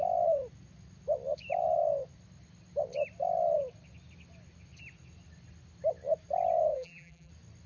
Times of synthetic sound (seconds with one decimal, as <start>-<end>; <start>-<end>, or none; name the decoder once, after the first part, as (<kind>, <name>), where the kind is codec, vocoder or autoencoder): 6.7-7.3 (vocoder, BigVGAN v2)